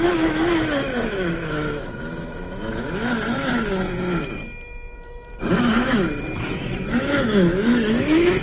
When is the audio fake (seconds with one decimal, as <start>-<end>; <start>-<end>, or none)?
0.0-4.4; 5.4-8.4